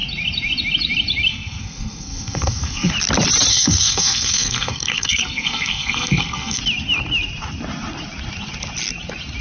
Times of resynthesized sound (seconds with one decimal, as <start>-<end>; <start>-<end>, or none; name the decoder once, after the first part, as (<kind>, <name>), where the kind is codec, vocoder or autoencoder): 1.3-2.9 (codec, SNAC); 3.5-6.6